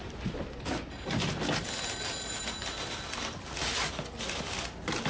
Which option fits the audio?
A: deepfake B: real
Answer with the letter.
B